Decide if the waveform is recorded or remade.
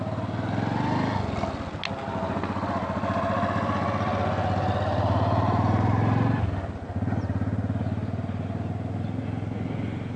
recorded